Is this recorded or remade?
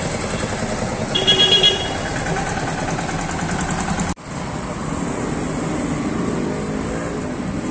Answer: recorded